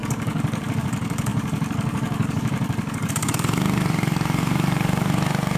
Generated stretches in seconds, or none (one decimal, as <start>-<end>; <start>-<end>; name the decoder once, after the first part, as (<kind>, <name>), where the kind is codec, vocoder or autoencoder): 0.0-5.6 (codec, DAC)